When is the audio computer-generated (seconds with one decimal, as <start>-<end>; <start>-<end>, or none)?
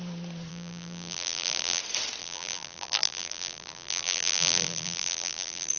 0.5-1.8; 2.2-5.8